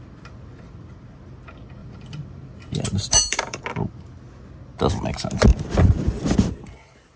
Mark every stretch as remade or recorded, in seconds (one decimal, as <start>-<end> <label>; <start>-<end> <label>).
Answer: 0.0-1.8 recorded; 1.8-3.6 remade; 3.6-5.5 recorded; 5.5-7.2 remade